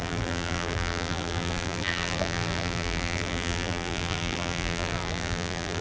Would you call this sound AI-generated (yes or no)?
yes